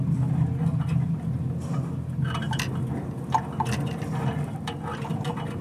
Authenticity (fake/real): real